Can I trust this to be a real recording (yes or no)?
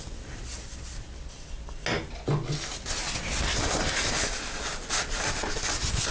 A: yes